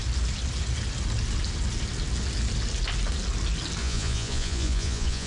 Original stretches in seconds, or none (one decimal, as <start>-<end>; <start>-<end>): 0.0-3.8